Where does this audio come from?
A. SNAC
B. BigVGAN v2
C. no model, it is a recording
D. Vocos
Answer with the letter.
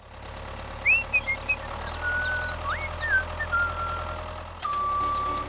C